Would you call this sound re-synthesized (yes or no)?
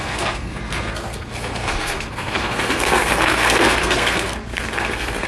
yes